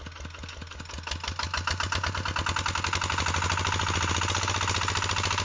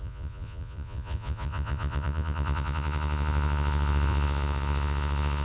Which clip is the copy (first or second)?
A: second